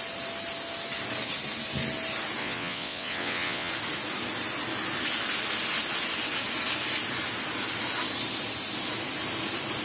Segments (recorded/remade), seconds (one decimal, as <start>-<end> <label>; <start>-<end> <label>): 0.0-2.4 recorded; 2.4-3.7 remade; 3.7-9.8 recorded